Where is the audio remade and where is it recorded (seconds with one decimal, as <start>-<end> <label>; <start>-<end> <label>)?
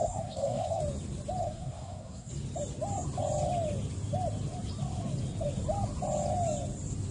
0.0-0.8 remade; 0.8-1.4 recorded; 1.4-2.3 remade; 2.3-7.1 recorded